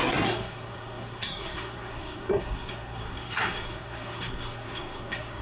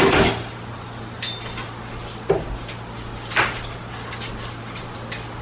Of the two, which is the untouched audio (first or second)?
second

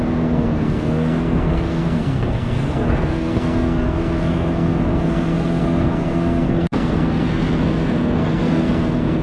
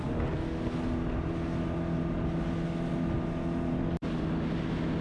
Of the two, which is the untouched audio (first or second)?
second